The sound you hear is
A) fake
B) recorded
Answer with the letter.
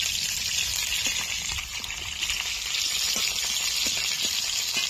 B